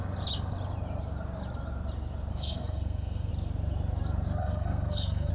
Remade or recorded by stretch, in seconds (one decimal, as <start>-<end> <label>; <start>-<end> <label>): 0.0-2.3 recorded; 2.3-3.3 remade; 3.3-4.4 recorded; 4.4-5.3 remade